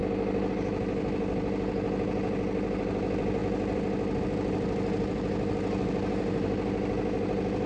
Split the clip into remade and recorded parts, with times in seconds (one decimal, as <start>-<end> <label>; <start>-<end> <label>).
0.0-7.7 recorded